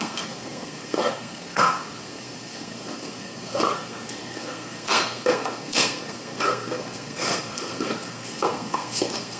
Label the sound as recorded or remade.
remade